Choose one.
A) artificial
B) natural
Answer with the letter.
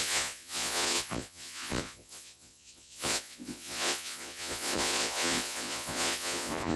A